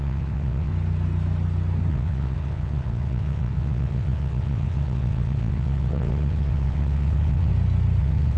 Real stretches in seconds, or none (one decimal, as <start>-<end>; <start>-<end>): 0.7-1.9; 7.5-8.0